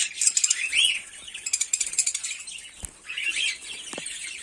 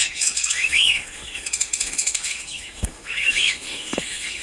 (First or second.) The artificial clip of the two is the second